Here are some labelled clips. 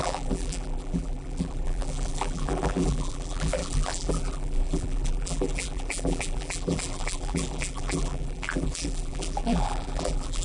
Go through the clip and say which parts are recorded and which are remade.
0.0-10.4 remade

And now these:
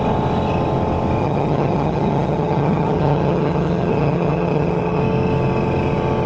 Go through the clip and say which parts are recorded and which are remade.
0.0-1.2 recorded; 1.2-5.0 remade; 5.0-6.3 recorded